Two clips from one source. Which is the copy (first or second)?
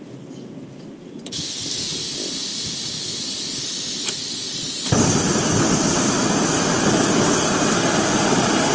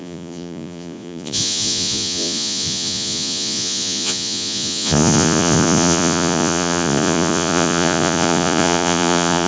second